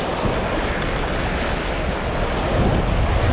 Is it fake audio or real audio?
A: real